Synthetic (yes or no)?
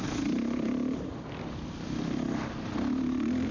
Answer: no